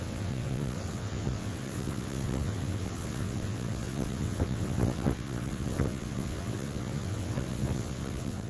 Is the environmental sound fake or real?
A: fake